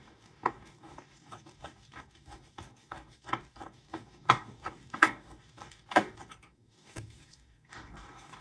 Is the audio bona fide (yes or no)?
no